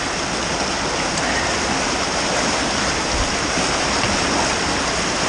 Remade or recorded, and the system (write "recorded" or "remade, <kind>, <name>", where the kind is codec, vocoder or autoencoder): recorded